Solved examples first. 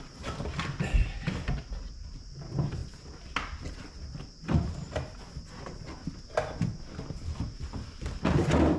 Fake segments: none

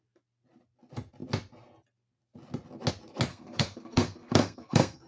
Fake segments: 3.3-5.1 (codec, SNAC)

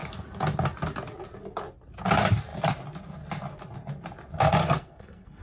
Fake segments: 4.6-5.4 (codec, SNAC)

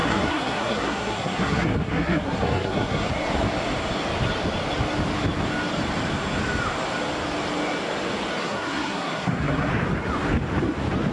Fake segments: 0.0-3.1 (codec, SNAC); 8.4-9.7

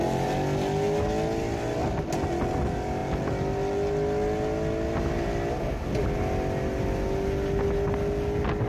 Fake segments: none

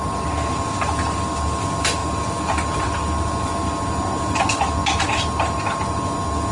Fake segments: none

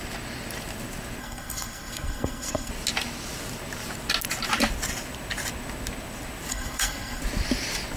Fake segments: 1.2-2.7 (codec, SNAC); 6.5-7.2

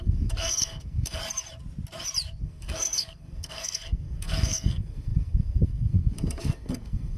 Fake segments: 0.0-1.2 (codec, SNAC); 2.4-7.2